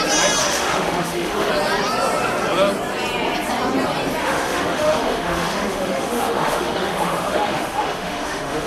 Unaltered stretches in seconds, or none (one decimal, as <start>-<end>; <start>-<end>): 0.0-0.4; 1.5-4.2